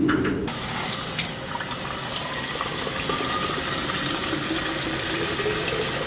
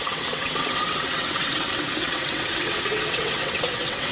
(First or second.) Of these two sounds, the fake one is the second